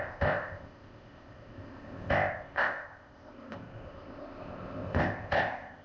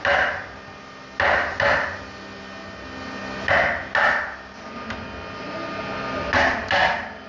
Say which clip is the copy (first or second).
first